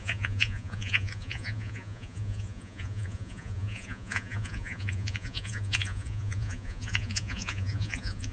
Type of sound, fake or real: fake